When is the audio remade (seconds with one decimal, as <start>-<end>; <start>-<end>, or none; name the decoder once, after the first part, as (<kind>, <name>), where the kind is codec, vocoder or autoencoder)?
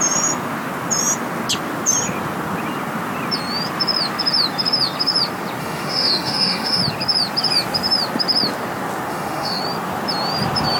5.6-6.8 (autoencoder, DAC-VAE); 9.1-9.6